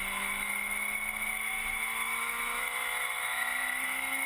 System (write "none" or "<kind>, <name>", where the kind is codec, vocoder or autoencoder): autoencoder, DAC-VAE